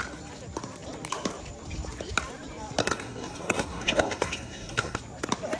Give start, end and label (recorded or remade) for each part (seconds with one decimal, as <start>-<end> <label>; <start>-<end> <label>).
0.0-2.8 recorded; 2.8-5.0 remade; 5.0-5.6 recorded